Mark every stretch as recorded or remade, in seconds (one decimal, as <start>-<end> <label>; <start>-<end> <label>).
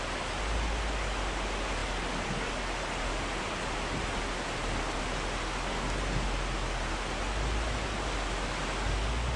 0.0-9.4 recorded